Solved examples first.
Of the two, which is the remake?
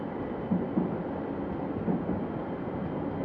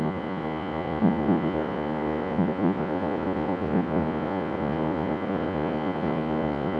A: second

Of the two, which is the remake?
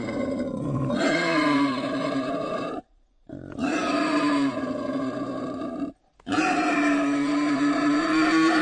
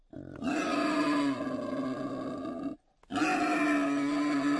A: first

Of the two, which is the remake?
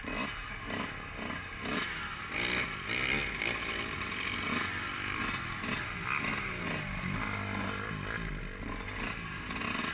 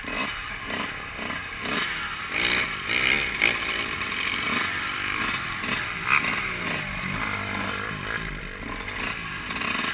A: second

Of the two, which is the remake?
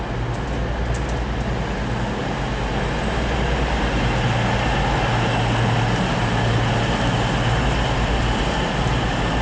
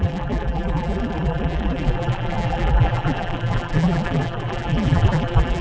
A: second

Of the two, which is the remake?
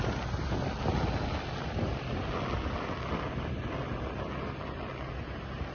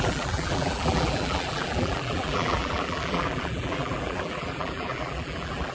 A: second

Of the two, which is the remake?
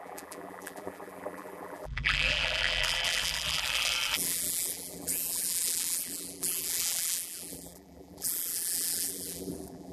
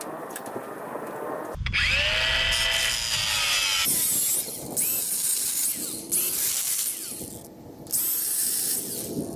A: first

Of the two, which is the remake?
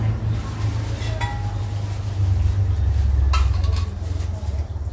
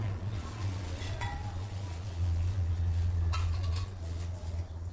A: second